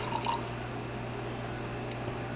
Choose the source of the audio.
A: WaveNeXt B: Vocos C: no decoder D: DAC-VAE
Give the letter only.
C